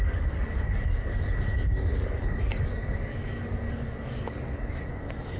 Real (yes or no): no